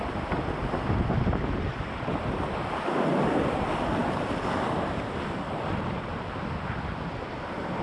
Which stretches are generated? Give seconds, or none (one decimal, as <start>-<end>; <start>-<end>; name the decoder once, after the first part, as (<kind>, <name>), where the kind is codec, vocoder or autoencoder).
none